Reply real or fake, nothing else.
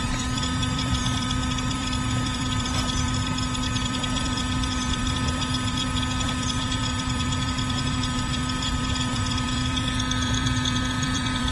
fake